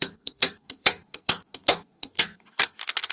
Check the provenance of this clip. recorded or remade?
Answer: remade